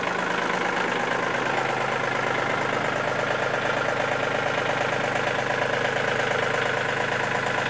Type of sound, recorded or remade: recorded